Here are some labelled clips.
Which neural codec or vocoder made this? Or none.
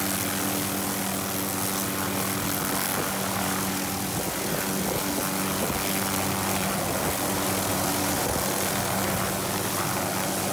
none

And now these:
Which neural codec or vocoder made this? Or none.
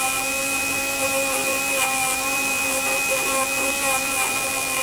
vocoder, BigVGAN v2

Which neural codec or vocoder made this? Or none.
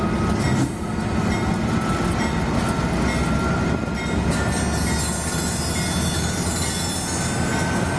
none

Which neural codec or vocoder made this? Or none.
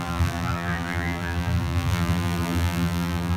vocoder, BigVGAN v2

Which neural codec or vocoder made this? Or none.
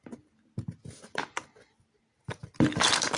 none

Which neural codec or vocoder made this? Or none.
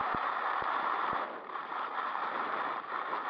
vocoder, BigVGAN v2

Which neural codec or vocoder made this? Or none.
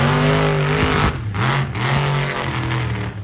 none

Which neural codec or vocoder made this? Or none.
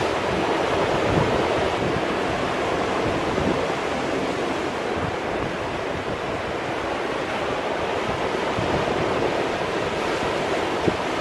none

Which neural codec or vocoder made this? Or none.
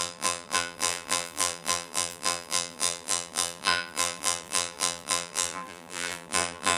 vocoder, BigVGAN v2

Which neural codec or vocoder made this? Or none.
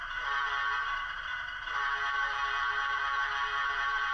vocoder, BigVGAN v2